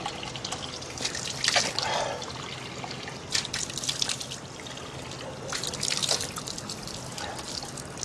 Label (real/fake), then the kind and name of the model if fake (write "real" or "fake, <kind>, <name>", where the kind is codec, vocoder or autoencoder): real